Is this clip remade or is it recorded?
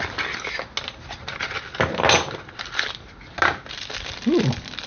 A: recorded